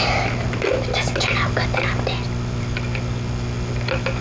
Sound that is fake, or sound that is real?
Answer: real